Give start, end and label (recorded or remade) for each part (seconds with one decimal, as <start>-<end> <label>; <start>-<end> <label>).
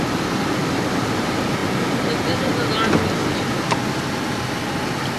0.0-1.6 remade; 1.6-4.6 recorded; 4.6-5.2 remade